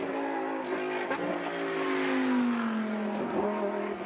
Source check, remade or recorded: recorded